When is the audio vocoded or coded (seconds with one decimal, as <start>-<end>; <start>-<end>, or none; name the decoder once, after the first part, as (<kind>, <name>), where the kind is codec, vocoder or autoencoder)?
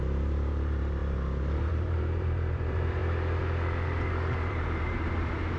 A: 0.0-1.0 (vocoder, BigVGAN v2); 1.7-3.0; 4.5-5.6